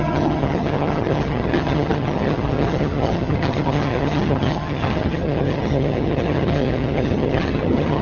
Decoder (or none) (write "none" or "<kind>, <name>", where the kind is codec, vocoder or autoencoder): vocoder, HiFi-GAN